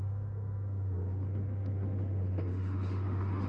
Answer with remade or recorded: remade